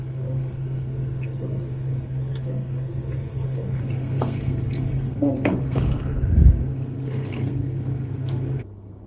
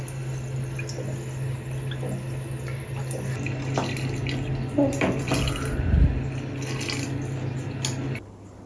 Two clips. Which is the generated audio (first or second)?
first